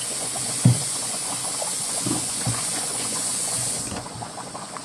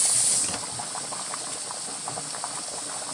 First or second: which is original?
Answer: second